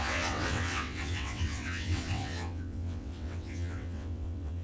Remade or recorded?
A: remade